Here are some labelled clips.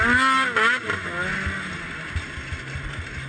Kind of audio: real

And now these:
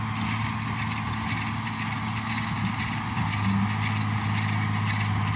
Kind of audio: real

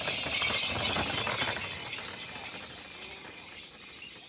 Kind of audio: real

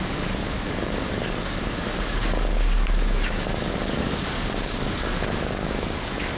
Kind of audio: fake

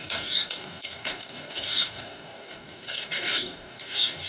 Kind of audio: fake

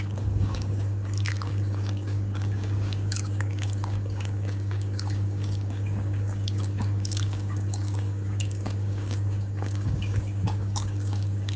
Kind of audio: fake